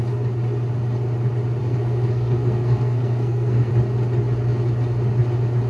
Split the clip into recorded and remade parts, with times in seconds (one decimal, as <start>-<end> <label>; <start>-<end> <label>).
0.0-1.6 recorded; 1.6-3.7 remade; 3.7-5.7 recorded